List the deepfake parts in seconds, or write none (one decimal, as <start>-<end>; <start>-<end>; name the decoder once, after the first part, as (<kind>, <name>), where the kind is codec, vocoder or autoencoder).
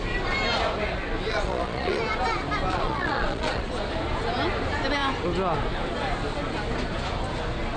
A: 1.3-2.0 (vocoder, Vocos); 2.7-3.7